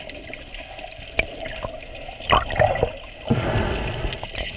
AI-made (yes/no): no